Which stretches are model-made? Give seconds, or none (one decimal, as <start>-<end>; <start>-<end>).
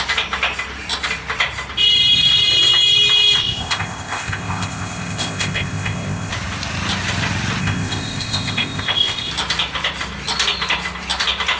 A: 3.4-6.3; 7.6-9.3